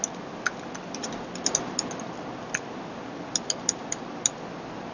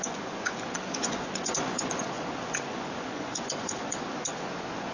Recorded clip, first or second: first